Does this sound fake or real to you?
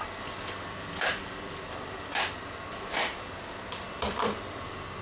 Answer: fake